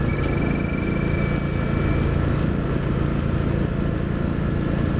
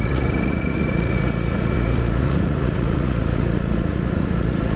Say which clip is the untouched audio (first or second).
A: first